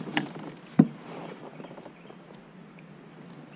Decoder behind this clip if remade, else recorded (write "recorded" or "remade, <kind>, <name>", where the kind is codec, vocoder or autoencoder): remade, vocoder, BigVGAN v2